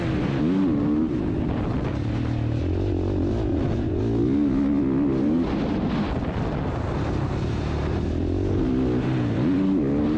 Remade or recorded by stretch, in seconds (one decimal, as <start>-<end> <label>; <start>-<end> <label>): 0.0-3.5 recorded; 3.5-4.0 remade; 4.0-10.2 recorded